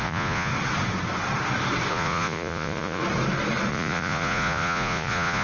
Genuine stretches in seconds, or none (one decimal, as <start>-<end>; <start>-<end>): 0.5-1.9; 3.0-3.7